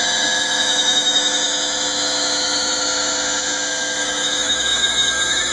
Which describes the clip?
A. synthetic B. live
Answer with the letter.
A